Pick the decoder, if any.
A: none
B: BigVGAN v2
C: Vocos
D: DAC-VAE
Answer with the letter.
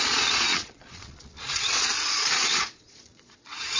C